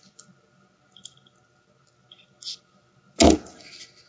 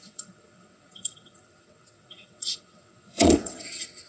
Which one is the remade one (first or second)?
second